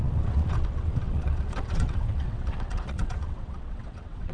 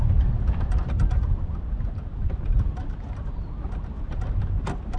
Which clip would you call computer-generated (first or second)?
first